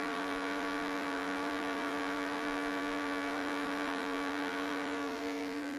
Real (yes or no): no